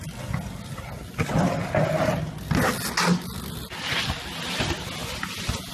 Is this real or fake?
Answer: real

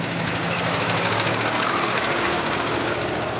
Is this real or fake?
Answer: fake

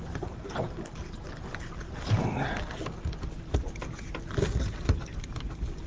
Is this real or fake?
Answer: real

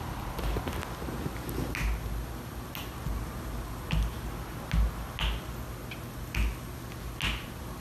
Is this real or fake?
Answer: real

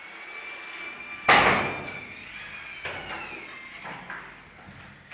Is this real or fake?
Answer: real